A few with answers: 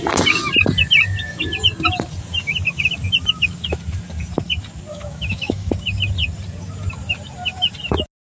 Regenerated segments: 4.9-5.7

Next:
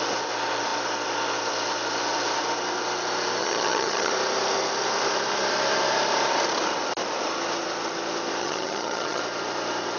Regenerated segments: 3.4-4.1; 8.4-9.2

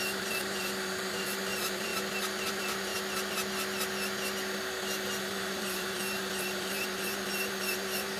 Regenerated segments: 0.0-1.9; 2.5-2.9; 5.2-8.2

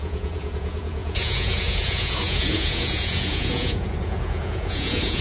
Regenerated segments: 0.0-5.2

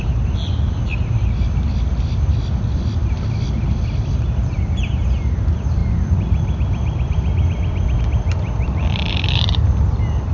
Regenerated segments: none

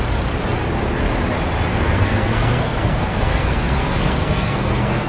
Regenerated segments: 1.7-5.1